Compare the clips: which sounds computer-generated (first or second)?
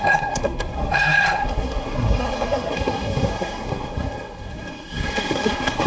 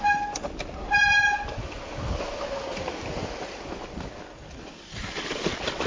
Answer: first